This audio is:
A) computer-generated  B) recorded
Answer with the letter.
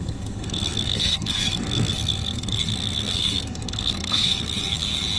A